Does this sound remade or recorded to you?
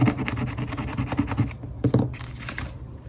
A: recorded